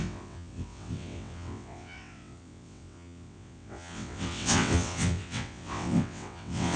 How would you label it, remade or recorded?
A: remade